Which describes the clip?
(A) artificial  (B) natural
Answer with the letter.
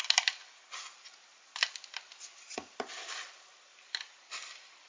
B